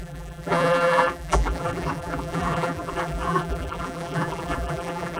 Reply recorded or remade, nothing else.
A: remade